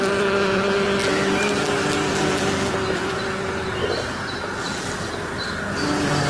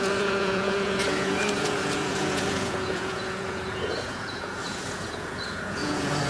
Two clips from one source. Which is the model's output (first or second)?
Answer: second